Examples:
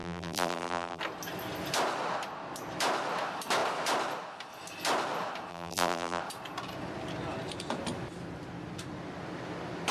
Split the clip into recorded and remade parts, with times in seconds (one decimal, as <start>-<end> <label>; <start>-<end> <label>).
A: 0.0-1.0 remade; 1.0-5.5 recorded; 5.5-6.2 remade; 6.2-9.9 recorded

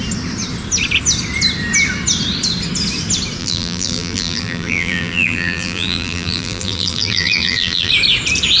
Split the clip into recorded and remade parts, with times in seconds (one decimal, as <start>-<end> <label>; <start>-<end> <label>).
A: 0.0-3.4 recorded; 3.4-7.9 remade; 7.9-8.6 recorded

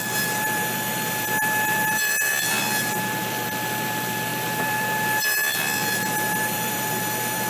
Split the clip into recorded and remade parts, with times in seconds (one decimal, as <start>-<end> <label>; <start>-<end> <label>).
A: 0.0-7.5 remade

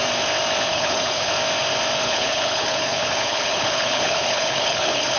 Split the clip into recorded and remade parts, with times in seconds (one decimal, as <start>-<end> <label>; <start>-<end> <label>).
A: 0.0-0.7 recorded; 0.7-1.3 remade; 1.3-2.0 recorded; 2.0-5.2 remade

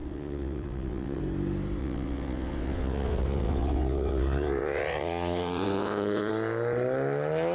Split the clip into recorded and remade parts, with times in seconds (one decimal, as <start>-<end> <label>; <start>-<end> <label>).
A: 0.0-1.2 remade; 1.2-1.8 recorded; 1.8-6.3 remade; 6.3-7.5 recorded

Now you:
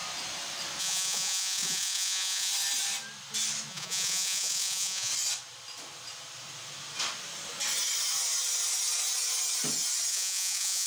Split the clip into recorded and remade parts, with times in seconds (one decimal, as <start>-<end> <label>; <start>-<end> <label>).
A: 0.0-0.8 recorded; 0.8-2.5 remade; 2.5-3.7 recorded; 3.7-5.1 remade; 5.1-10.1 recorded; 10.1-10.9 remade

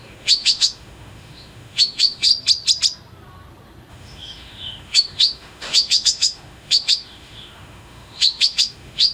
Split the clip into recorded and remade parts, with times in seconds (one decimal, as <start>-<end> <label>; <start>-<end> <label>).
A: 0.0-2.3 remade; 2.3-3.9 recorded; 3.9-9.1 remade

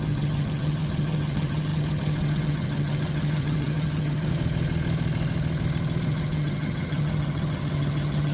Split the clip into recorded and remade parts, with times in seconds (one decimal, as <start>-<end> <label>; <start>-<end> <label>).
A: 0.0-4.3 remade; 4.3-6.0 recorded; 6.0-8.3 remade